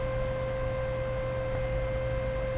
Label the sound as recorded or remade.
recorded